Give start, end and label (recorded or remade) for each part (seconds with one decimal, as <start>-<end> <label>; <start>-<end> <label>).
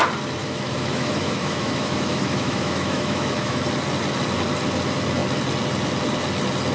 0.0-0.4 recorded; 0.4-3.6 remade; 3.6-6.7 recorded